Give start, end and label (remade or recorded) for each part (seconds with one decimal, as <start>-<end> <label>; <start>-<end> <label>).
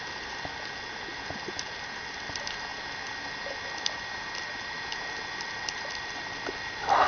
0.0-7.1 recorded